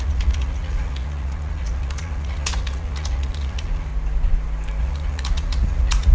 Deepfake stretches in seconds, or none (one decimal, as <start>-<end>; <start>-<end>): 0.0-3.9; 4.8-6.1